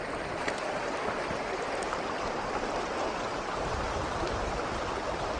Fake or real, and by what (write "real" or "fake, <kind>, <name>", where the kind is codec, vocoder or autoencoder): real